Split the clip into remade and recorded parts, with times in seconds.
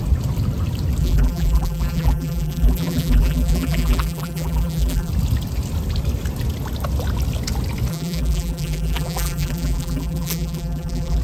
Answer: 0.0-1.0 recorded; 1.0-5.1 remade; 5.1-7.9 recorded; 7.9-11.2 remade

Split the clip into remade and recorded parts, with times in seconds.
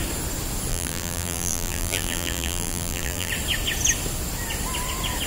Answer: 0.0-0.7 recorded; 0.7-3.3 remade; 3.3-5.3 recorded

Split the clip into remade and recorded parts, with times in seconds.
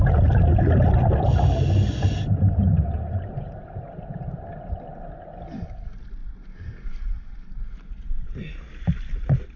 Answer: 0.0-9.6 recorded